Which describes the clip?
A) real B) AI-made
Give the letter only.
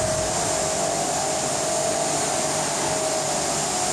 A